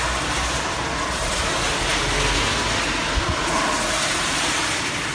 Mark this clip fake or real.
real